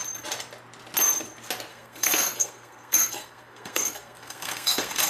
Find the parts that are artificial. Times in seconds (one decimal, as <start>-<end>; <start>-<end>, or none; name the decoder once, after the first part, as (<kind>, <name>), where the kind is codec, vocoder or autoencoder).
1.7-5.1 (codec, SNAC)